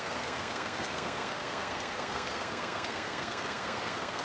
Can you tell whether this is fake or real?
fake